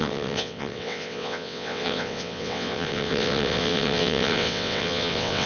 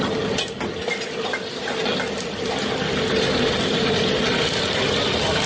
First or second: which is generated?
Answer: first